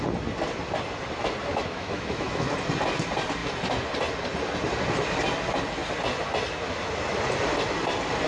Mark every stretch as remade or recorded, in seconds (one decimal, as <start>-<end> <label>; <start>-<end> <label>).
0.0-1.5 recorded; 1.5-2.5 remade; 2.5-8.3 recorded